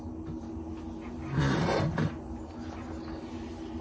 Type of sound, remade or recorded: recorded